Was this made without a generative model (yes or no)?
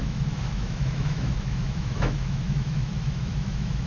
no